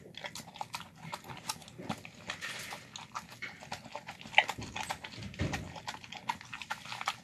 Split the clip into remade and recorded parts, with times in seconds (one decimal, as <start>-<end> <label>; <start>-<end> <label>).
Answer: 0.0-7.2 recorded